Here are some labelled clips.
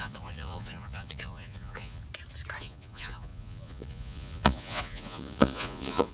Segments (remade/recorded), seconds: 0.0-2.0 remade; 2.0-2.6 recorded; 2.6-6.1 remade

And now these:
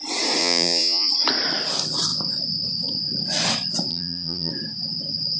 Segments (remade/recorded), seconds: 0.0-0.4 recorded; 0.4-1.1 remade; 1.1-3.9 recorded; 3.9-4.5 remade; 4.5-5.4 recorded

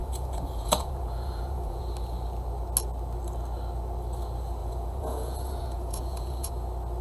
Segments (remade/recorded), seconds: 0.0-1.8 remade; 1.8-4.6 recorded; 4.6-6.5 remade; 6.5-7.0 recorded

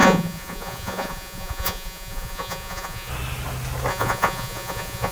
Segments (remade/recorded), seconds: 0.0-3.1 remade; 3.1-3.9 recorded; 3.9-5.1 remade

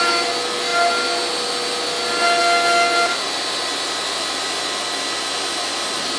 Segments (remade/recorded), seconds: 0.0-6.2 recorded

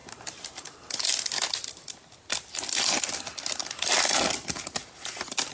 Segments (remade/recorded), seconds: 0.0-5.5 recorded

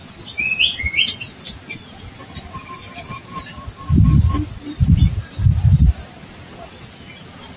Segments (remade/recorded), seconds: 0.0-3.5 remade; 3.5-6.2 recorded; 6.2-7.6 remade

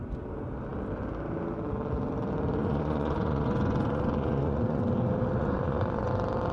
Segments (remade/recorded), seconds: 0.0-2.6 recorded; 2.6-4.8 remade; 4.8-5.4 recorded; 5.4-6.1 remade; 6.1-6.5 recorded